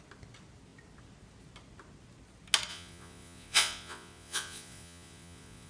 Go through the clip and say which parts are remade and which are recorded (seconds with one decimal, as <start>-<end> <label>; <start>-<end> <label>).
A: 0.0-2.7 recorded; 2.7-5.7 remade

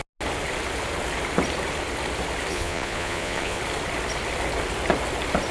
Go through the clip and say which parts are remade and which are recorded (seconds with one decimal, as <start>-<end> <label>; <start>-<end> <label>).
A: 0.0-2.5 recorded; 2.5-3.6 remade; 3.6-5.5 recorded

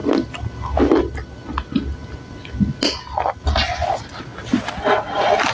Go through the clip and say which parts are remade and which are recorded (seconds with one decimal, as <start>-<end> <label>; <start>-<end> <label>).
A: 0.0-5.5 recorded

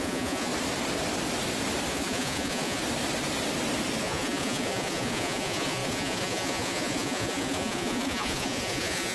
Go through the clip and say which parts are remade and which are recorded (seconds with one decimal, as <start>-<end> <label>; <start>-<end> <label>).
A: 0.0-0.5 remade; 0.5-1.9 recorded; 1.9-2.8 remade; 2.8-4.0 recorded; 4.0-9.1 remade

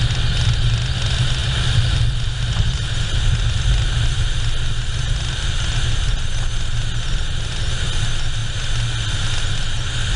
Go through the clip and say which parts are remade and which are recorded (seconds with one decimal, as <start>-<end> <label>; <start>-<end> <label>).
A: 0.0-10.2 recorded

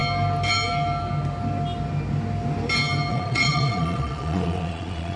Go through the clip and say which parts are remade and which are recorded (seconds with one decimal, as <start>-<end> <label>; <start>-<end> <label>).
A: 0.0-3.1 recorded; 3.1-5.2 remade

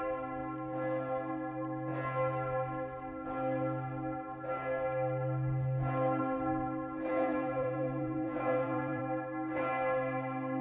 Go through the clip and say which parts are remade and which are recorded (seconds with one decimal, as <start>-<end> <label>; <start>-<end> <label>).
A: 0.0-7.1 recorded; 7.1-9.0 remade; 9.0-10.6 recorded

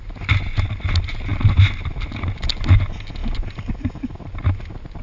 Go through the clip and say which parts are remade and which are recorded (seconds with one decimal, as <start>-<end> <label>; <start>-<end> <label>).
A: 0.0-5.0 recorded